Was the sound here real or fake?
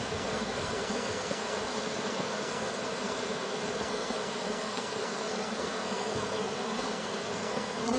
fake